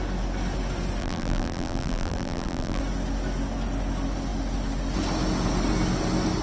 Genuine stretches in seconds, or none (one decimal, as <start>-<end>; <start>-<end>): 0.0-1.0; 2.8-6.4

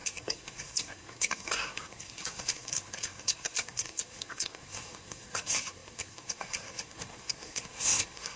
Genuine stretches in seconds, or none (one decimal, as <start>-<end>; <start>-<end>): none

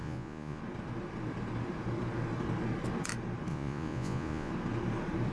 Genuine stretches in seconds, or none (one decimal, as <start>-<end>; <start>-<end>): 0.6-3.5; 4.5-5.3

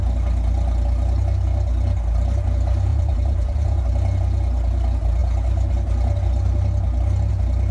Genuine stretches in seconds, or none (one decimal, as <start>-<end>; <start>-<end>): 0.0-2.9; 3.8-7.7

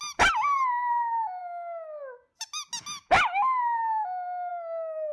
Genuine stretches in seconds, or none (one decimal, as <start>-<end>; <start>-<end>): 0.0-5.1

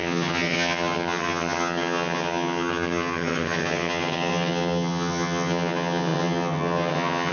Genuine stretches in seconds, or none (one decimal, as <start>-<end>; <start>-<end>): none

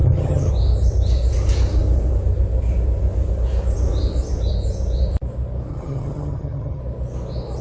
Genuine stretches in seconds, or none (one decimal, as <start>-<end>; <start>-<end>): 0.5-5.7; 6.8-7.6